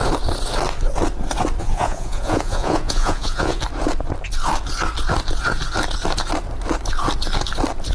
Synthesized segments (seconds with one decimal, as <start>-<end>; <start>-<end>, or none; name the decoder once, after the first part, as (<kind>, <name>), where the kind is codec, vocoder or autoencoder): 1.6-3.6 (vocoder, Vocos)